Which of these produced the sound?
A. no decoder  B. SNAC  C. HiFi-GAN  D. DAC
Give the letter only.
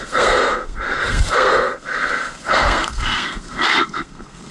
B